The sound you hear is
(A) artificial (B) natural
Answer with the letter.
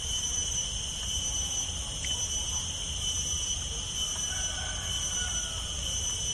B